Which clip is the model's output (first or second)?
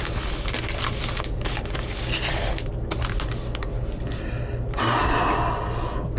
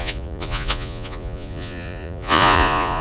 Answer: second